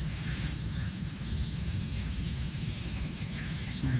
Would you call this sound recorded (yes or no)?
no